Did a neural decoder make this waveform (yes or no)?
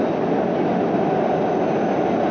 no